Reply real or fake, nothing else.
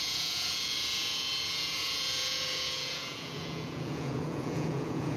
fake